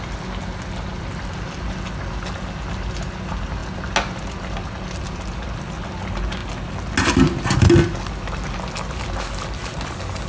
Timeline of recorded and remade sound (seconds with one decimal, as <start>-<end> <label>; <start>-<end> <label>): 0.0-10.3 recorded